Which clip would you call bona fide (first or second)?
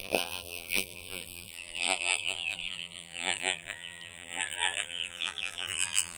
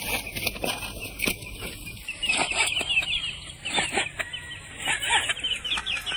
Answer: second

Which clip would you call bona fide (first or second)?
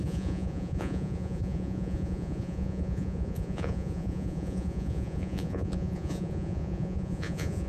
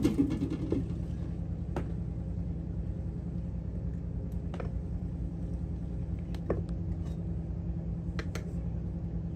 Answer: second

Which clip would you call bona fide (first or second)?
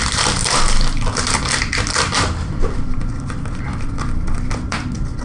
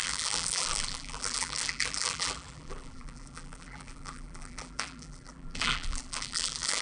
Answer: first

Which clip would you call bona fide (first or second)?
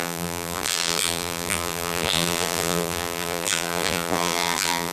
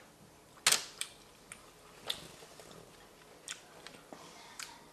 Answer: second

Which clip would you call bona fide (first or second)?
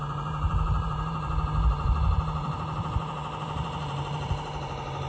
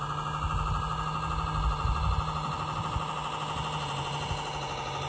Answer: second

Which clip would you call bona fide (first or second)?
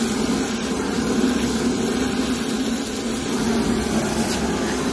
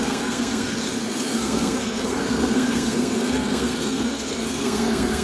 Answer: first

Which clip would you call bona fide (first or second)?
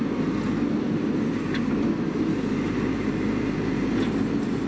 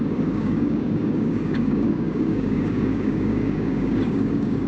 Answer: first